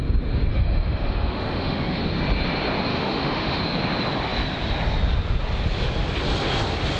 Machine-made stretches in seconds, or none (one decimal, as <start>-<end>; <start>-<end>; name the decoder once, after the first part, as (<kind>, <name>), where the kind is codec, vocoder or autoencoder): 0.5-2.0 (autoencoder, DAC-VAE); 2.9-3.6